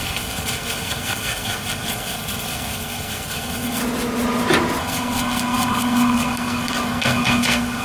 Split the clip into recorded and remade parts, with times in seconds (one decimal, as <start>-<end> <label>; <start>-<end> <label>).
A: 0.0-3.8 remade; 3.8-4.8 recorded; 4.8-7.8 remade